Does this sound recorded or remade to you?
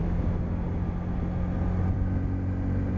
recorded